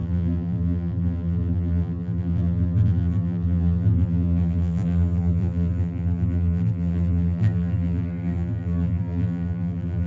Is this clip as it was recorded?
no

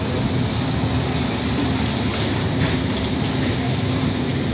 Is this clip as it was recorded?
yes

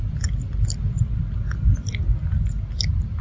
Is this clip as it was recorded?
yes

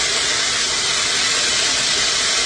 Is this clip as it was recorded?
no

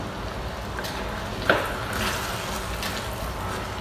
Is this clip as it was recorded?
yes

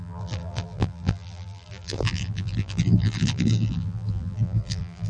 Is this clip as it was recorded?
no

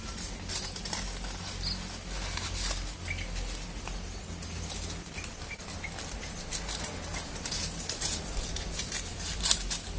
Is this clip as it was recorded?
yes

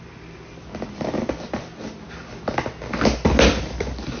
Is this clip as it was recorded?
yes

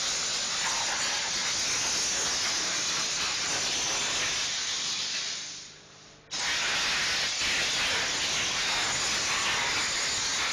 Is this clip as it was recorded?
yes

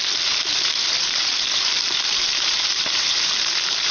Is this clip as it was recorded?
no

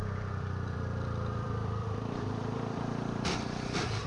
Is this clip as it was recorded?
no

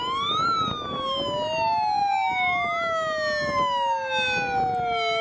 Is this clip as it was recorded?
yes